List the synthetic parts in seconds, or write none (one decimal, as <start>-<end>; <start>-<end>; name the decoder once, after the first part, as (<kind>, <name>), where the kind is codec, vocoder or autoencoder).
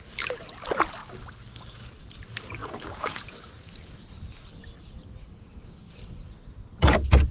1.0-1.9 (codec, DAC); 2.6-3.2; 5.2-5.9